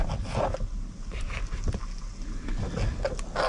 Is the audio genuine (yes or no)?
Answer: yes